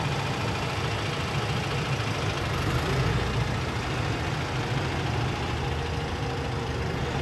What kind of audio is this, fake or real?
real